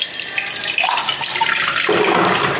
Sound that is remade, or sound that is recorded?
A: recorded